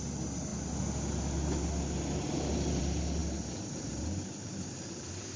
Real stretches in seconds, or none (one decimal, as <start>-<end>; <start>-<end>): 0.0-5.4